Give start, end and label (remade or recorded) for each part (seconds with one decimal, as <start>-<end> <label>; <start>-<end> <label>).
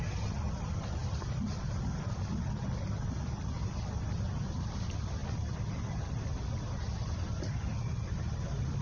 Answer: 0.0-8.8 recorded